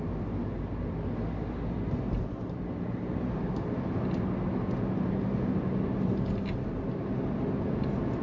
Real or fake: real